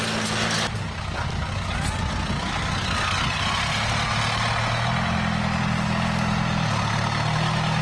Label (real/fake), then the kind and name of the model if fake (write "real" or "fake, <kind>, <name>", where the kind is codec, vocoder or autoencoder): real